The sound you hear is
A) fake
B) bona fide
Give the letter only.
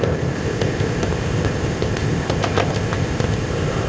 A